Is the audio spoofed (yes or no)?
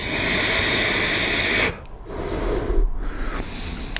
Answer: no